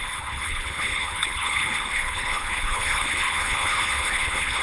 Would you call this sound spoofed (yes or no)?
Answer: yes